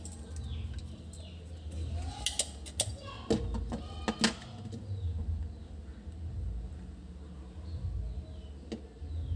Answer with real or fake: real